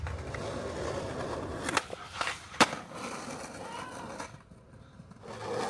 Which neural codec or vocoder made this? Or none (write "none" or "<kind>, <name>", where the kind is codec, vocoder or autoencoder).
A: none